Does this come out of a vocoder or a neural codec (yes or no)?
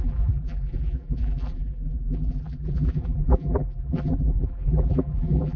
yes